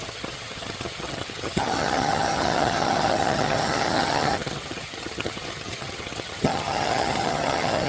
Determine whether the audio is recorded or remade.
remade